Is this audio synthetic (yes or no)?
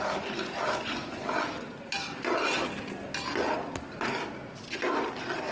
no